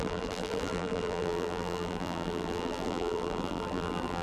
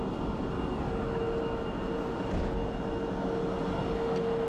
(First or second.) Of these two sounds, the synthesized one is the first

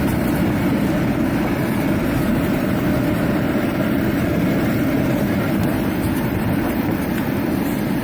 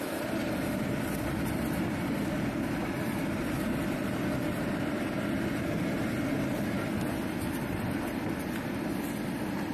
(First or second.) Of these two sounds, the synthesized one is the first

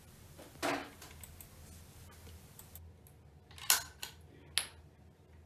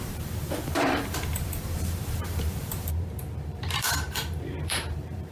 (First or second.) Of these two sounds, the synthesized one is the second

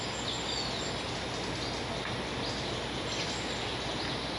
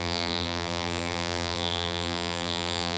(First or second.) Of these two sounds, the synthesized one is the second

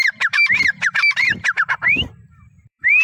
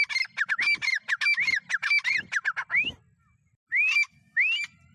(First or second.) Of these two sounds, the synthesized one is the first